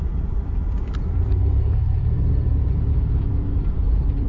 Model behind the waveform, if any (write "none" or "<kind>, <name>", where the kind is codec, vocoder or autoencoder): vocoder, BigVGAN v2